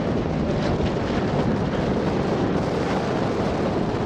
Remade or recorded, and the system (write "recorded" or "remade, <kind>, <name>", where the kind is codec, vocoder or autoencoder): recorded